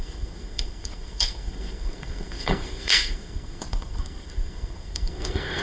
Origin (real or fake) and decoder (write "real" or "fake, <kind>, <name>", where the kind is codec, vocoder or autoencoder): fake, codec, SNAC